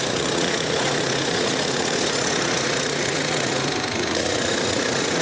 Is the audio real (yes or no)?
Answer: no